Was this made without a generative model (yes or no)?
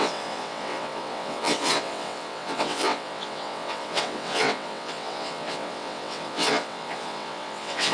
no